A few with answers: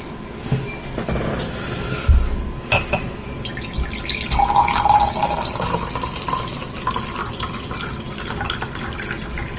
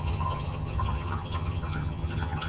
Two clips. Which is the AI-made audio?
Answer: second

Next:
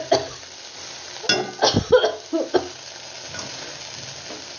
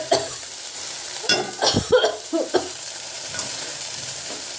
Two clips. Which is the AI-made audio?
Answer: second